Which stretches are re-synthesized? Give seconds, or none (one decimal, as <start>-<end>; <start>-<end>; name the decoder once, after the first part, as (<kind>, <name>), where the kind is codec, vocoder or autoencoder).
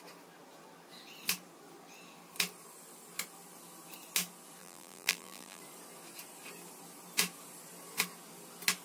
4.6-5.6 (vocoder, BigVGAN v2)